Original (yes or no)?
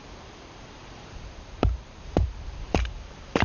no